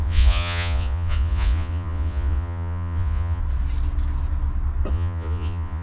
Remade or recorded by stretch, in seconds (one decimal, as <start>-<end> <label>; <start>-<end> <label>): 0.0-3.4 remade; 3.4-4.9 recorded; 4.9-5.8 remade